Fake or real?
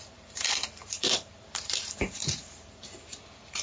fake